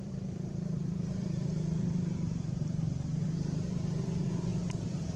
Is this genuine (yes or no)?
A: no